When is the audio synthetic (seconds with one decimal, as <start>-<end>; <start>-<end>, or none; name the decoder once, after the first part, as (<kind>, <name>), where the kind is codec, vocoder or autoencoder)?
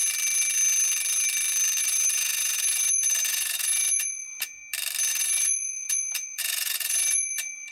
1.8-4.6 (vocoder, Vocos); 5.1-7.7